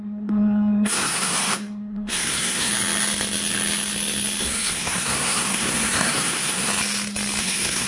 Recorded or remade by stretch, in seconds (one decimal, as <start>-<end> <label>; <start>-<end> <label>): 0.0-2.7 remade; 2.7-4.4 recorded; 4.4-6.7 remade; 6.7-7.4 recorded; 7.4-7.9 remade